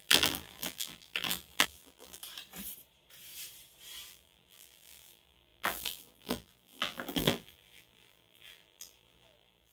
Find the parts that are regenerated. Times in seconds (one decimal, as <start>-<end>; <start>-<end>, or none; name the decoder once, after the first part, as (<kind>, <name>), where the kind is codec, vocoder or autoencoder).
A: 0.0-2.2 (vocoder, BigVGAN v2); 4.1-9.7